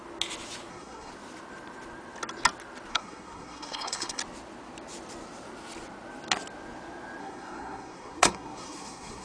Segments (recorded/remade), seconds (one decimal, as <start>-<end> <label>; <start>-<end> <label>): 0.0-0.7 recorded; 0.7-1.1 remade; 1.1-2.9 recorded; 2.9-4.2 remade; 4.2-7.2 recorded; 7.2-9.2 remade